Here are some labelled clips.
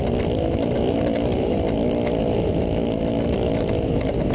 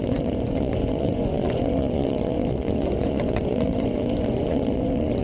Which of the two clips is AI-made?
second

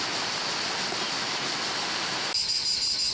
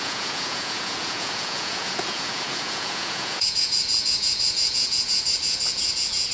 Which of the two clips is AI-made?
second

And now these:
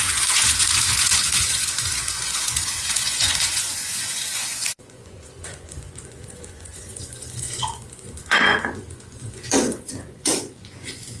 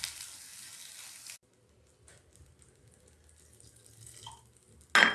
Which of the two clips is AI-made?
first